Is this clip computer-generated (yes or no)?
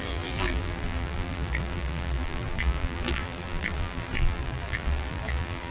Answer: yes